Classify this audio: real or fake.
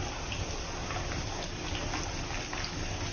real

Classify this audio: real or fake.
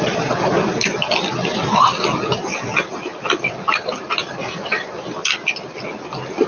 real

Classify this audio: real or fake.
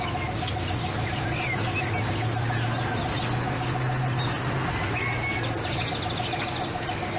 real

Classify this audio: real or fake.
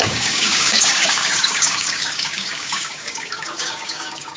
fake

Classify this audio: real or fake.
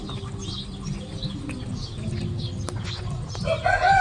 real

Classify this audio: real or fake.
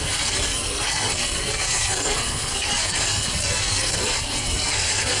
fake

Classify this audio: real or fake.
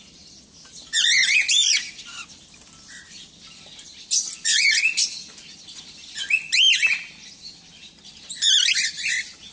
real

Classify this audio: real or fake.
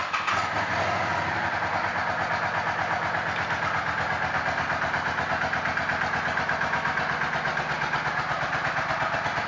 real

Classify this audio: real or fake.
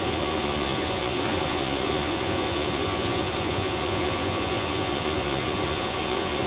fake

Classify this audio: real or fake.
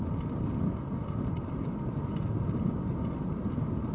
real